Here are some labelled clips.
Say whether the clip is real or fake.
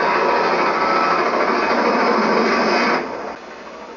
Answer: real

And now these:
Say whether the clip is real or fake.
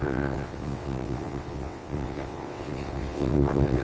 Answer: fake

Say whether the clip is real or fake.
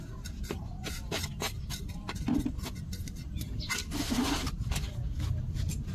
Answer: real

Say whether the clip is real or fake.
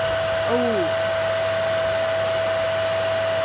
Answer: real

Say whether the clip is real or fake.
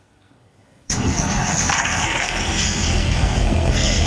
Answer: fake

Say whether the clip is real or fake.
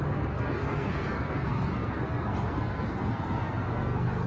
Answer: fake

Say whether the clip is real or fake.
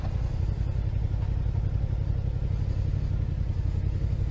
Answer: real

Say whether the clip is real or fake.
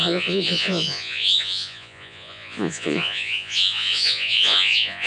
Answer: fake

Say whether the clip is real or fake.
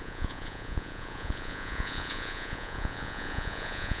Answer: fake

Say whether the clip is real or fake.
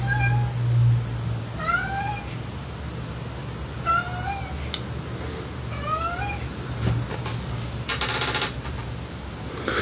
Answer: real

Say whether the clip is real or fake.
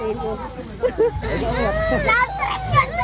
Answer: real